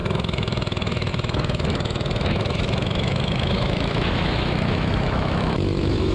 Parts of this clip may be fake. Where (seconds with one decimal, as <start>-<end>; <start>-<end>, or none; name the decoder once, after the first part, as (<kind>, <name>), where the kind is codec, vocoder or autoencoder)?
0.0-6.1 (autoencoder, DAC-VAE)